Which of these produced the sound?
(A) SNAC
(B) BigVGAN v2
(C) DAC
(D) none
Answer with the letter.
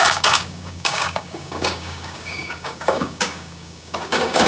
C